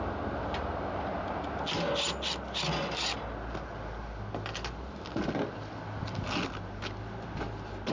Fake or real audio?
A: real